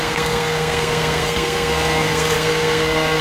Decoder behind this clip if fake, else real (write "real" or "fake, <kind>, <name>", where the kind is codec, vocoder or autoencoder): fake, codec, SNAC